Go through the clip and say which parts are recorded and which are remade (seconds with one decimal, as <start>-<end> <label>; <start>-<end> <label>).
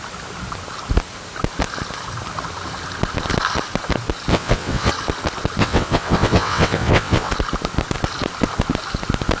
0.0-4.3 recorded; 4.3-4.9 remade; 4.9-5.6 recorded; 5.6-7.3 remade; 7.3-9.4 recorded